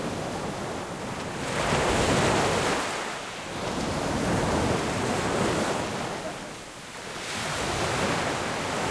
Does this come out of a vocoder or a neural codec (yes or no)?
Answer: no